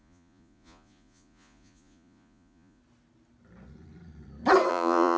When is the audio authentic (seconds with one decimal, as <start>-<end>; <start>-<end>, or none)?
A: 2.8-4.7